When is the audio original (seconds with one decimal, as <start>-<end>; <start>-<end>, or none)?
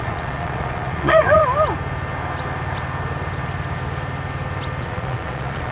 1.4-4.8